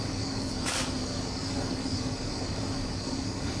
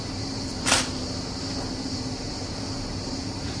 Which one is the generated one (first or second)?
first